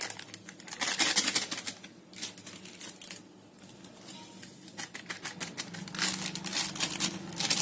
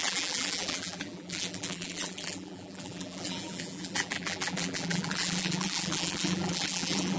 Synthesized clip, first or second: second